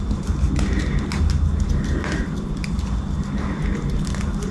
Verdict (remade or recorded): recorded